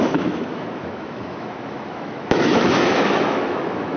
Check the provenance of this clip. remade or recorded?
remade